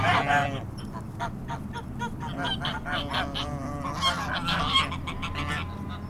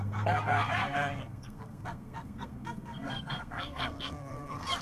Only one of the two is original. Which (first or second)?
first